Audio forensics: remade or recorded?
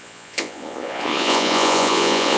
remade